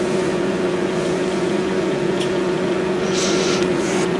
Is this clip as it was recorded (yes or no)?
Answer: no